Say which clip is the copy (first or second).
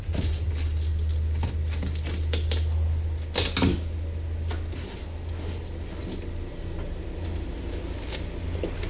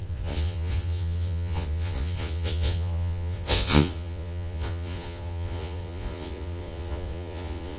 second